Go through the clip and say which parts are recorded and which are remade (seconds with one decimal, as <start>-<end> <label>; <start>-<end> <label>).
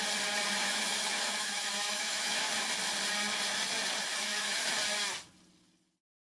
0.0-0.6 recorded; 0.6-2.5 remade; 2.5-4.1 recorded; 4.1-4.7 remade; 4.7-6.3 recorded